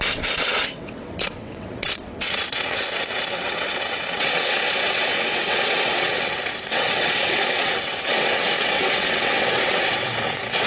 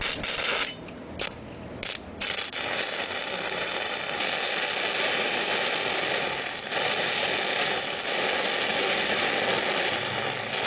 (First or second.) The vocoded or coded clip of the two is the first